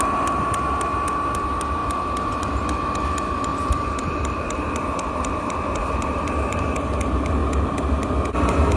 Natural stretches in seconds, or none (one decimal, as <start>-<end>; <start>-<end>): 0.0-3.5; 4.8-5.8; 6.6-8.8